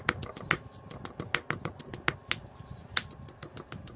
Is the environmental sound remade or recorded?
recorded